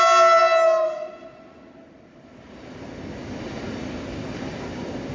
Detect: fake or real real